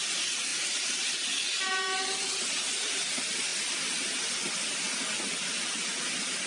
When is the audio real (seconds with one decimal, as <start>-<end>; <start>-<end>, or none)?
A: 0.0-6.5